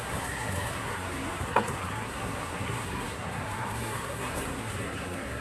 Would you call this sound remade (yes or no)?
yes